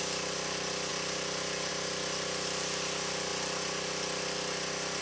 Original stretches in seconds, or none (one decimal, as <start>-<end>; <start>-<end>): 0.0-5.0